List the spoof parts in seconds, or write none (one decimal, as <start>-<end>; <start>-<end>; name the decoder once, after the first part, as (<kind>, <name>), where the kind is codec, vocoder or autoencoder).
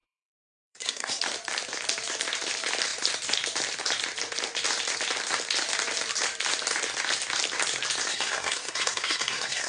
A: 0.0-1.2 (codec, SNAC); 8.1-9.7